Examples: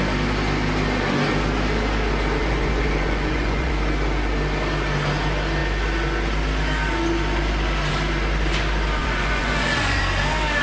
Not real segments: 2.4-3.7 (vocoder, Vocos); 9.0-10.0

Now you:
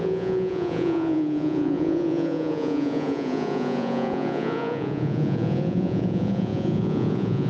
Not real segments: 0.0-7.5 (vocoder, Vocos)

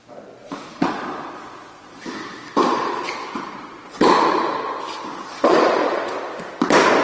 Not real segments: 0.4-2.0 (vocoder, Vocos); 2.7-4.8; 5.3-6.1

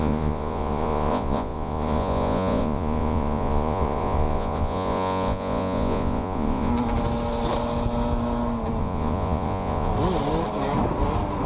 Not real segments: 0.0-6.7 (vocoder, Vocos); 8.8-9.9

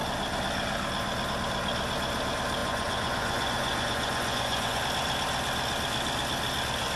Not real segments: 2.6-4.8 (vocoder, Vocos)